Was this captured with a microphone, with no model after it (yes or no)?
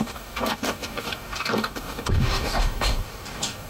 no